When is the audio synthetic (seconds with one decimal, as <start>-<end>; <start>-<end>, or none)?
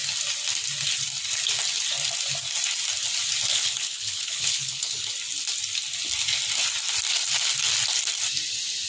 3.5-5.1